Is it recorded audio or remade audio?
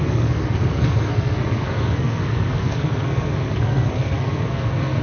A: remade